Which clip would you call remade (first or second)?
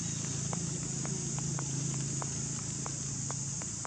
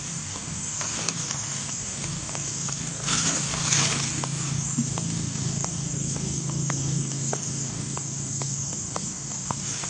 second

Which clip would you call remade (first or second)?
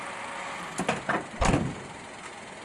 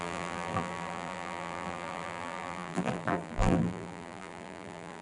second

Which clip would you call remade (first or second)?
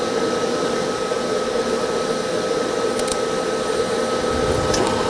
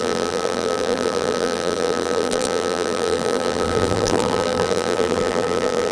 second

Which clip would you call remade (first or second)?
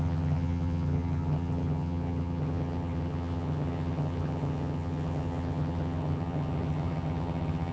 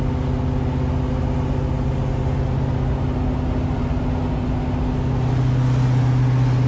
first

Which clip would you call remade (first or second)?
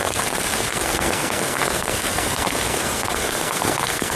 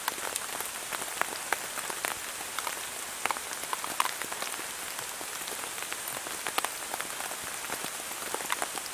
first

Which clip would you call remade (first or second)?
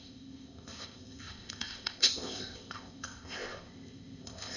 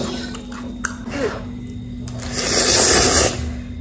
first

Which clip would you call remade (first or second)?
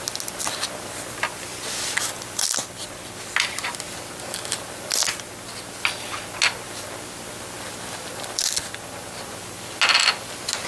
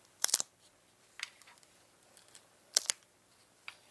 second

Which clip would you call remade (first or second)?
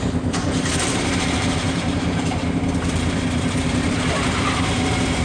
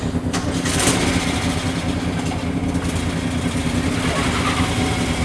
first